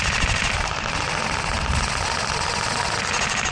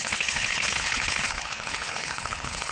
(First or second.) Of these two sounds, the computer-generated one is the second